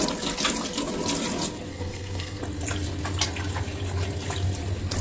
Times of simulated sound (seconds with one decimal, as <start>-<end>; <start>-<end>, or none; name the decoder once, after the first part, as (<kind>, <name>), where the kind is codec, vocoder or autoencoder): 1.7-2.4 (codec, SNAC)